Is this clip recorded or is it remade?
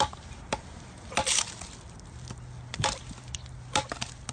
recorded